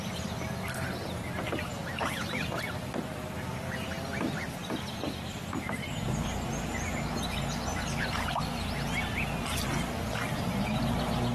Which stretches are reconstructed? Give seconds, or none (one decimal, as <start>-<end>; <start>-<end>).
none